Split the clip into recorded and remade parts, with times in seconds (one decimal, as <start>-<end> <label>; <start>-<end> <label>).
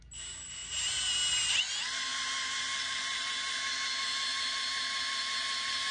0.0-5.9 recorded